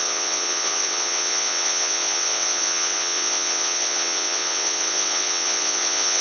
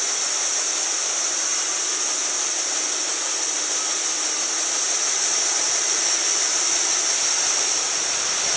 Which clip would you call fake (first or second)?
first